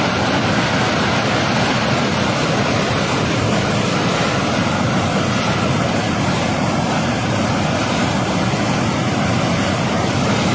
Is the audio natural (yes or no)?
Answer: yes